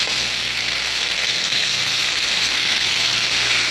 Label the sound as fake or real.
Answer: fake